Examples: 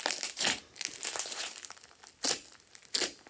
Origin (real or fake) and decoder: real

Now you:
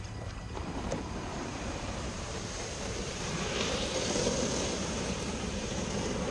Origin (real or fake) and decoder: fake, vocoder, BigVGAN v2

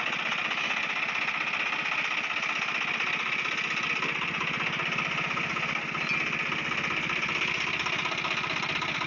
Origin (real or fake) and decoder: real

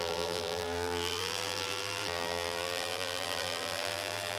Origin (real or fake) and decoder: fake, vocoder, BigVGAN v2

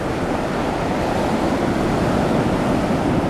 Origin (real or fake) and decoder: real